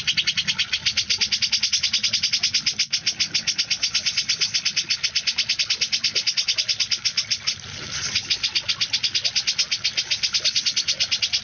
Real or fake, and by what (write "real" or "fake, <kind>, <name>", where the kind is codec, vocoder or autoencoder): real